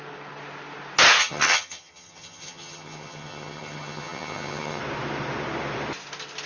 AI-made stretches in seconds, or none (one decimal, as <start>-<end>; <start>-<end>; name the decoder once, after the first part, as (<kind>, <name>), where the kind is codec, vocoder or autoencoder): 1.2-4.8 (vocoder, HiFi-GAN)